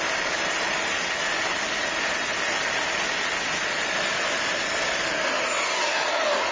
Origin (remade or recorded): recorded